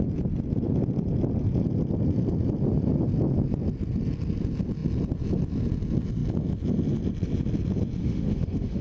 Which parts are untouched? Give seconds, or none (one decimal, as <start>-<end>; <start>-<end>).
0.0-8.0